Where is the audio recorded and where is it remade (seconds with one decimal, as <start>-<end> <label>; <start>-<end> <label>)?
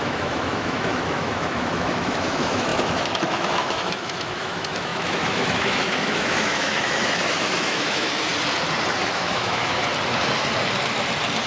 0.0-8.3 remade; 8.3-9.0 recorded; 9.0-9.8 remade; 9.8-11.5 recorded